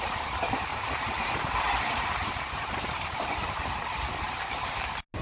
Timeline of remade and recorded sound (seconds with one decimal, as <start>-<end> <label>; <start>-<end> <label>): 0.0-0.7 recorded; 0.7-3.8 remade; 3.8-5.2 recorded